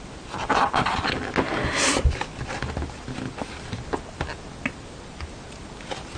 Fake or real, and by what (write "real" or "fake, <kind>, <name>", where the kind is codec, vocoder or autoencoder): real